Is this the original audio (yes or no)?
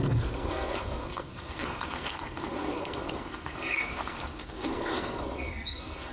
no